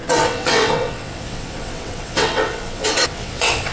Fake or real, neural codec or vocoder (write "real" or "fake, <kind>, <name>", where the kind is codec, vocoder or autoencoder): fake, vocoder, WaveNeXt